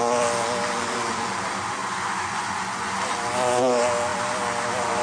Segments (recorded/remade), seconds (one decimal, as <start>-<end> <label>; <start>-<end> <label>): 0.0-1.8 recorded; 1.8-2.9 remade; 2.9-5.0 recorded